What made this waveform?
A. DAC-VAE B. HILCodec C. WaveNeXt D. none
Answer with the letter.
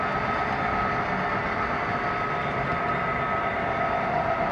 D